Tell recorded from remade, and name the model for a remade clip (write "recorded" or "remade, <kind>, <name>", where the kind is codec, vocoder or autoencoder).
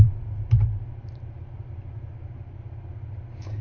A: remade, vocoder, BigVGAN v2